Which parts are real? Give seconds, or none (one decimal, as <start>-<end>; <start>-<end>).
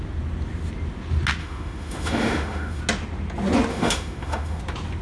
0.0-1.4; 2.8-3.7; 4.6-5.0